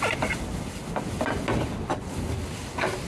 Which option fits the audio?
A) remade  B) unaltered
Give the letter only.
B